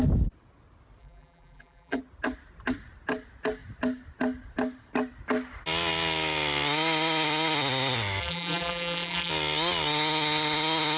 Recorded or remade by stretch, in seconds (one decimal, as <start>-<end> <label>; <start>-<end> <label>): 0.0-1.0 recorded; 1.0-2.0 remade; 2.0-8.2 recorded; 8.2-9.3 remade; 9.3-11.0 recorded